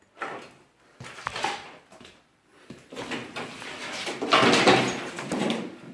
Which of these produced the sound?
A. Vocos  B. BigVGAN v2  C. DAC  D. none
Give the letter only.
D